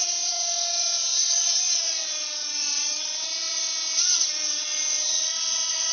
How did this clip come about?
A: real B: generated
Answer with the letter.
B